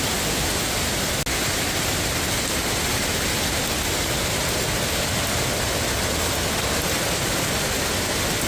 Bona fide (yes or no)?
yes